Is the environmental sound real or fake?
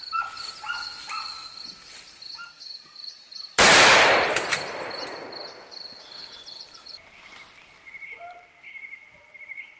fake